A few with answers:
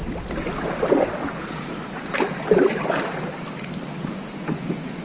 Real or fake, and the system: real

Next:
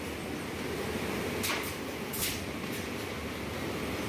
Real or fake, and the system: real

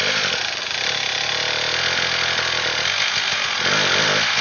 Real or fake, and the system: real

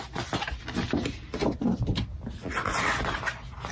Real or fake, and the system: real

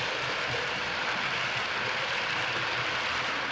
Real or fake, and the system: real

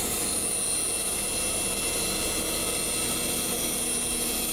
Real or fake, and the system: real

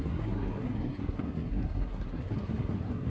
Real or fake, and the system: fake, codec, SNAC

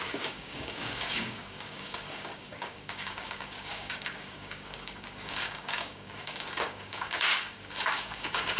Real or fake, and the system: fake, codec, DAC